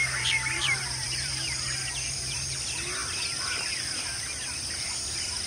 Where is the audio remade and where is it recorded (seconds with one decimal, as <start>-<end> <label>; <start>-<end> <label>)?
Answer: 0.0-2.5 remade; 2.5-5.5 recorded